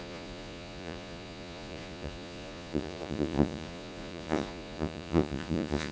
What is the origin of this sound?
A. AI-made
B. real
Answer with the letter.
A